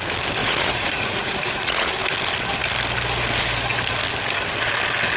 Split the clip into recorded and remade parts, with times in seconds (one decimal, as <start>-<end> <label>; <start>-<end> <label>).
0.0-0.4 recorded; 0.4-1.9 remade; 1.9-5.2 recorded